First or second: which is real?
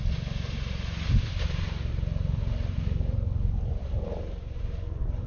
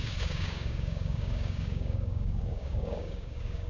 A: first